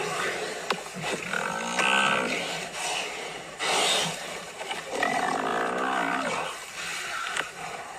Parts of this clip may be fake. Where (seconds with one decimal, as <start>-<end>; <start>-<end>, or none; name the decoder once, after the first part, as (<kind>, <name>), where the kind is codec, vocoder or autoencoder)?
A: none

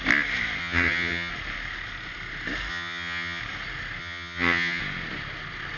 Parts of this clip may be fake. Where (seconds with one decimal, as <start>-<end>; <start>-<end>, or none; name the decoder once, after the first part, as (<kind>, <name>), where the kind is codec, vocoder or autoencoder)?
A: 0.6-1.3 (vocoder, HiFi-GAN); 2.7-3.4; 4.0-4.8

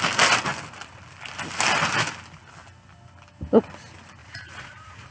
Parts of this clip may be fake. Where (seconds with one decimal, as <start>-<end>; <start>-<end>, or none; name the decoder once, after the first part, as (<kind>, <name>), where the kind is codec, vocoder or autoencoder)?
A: 4.2-5.1 (vocoder, Vocos)

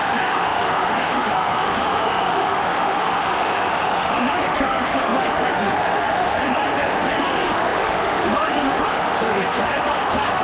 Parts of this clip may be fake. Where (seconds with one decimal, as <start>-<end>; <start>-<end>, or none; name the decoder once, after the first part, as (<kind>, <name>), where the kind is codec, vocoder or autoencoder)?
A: 0.0-10.4 (autoencoder, DAC-VAE)

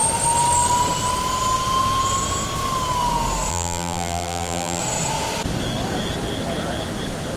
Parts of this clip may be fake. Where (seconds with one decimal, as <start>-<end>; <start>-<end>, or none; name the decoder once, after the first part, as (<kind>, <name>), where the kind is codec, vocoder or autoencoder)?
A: 3.5-4.8 (vocoder, BigVGAN v2)

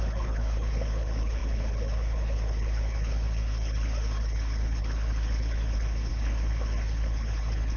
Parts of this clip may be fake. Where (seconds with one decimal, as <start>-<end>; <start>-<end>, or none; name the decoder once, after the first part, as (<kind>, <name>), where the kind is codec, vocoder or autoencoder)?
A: 0.0-7.8 (codec, HILCodec)